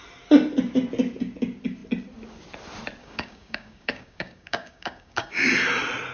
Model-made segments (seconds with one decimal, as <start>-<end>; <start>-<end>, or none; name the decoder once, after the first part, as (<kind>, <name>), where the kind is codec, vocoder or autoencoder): 3.0-5.5 (codec, DAC)